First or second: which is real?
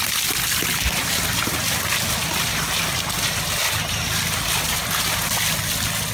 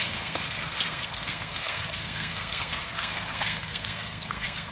first